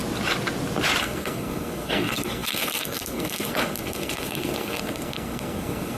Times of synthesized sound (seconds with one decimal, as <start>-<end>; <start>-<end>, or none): 1.0-6.0